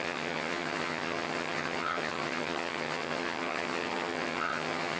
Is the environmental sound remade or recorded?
remade